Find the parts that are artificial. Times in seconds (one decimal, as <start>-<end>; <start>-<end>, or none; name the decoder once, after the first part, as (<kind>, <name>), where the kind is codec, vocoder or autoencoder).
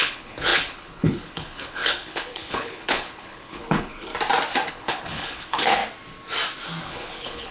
0.0-4.1 (codec, HILCodec); 4.7-5.8; 6.8-7.5